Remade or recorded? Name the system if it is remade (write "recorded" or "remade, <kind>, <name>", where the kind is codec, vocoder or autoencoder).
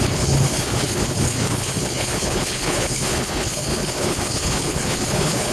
remade, codec, HILCodec